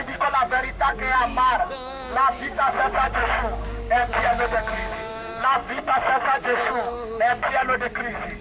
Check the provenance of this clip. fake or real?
fake